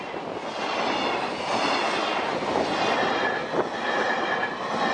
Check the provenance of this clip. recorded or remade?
recorded